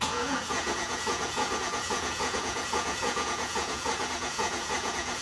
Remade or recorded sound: remade